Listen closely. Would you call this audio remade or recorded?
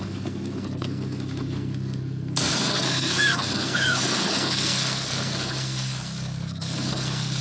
remade